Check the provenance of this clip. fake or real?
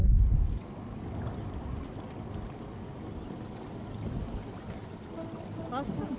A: real